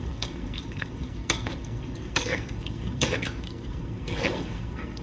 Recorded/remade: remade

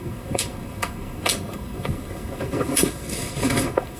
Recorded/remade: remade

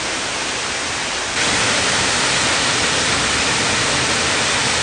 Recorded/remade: recorded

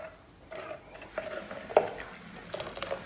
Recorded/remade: recorded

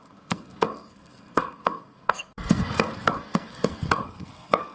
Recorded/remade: remade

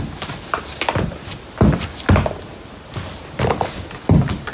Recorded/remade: recorded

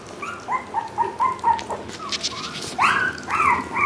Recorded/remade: recorded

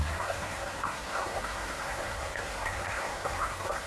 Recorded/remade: remade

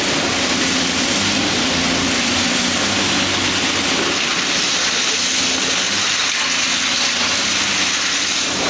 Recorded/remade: recorded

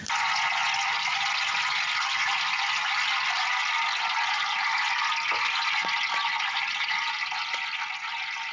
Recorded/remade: recorded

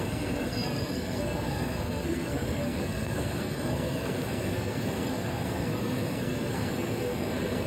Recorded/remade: remade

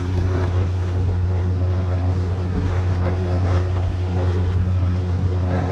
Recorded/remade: remade